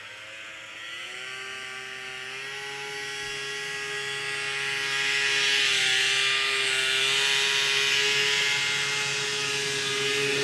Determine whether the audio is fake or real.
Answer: real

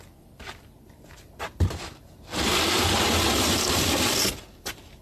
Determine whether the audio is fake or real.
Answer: fake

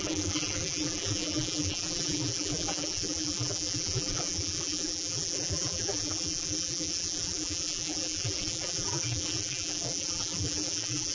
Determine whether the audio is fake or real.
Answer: fake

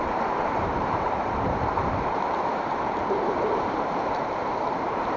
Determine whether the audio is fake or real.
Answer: fake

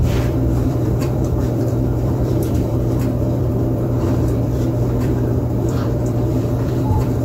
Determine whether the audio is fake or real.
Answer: fake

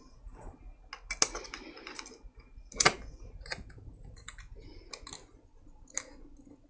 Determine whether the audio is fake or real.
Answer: real